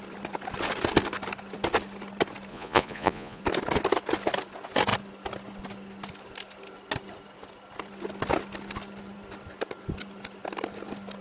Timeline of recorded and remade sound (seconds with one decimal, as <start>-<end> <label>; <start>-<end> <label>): 0.0-2.5 recorded; 2.5-3.4 remade; 3.4-11.2 recorded